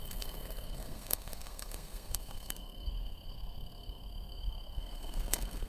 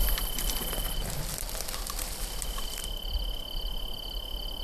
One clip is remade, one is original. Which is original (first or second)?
second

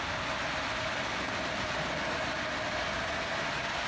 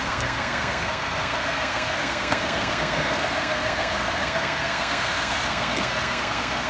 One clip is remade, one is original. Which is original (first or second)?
first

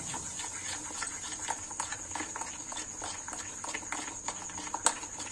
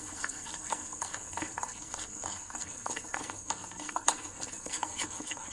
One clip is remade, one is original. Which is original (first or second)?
first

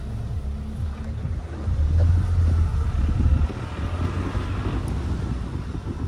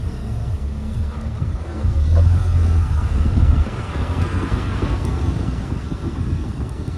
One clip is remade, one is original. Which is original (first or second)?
first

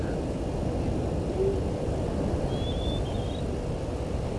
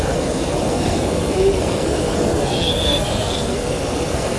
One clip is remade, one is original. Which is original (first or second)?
first